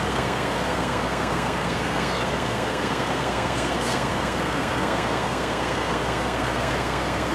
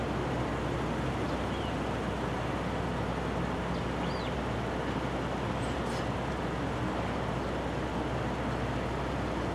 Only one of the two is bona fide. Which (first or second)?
second